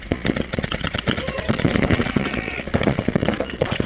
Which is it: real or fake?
fake